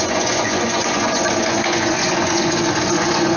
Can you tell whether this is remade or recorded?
remade